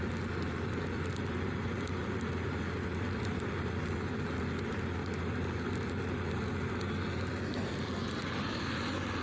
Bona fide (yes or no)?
yes